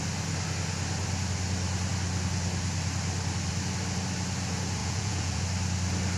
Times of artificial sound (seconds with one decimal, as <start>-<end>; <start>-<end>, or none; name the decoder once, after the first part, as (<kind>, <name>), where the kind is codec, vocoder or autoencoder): 4.8-5.4 (vocoder, Vocos)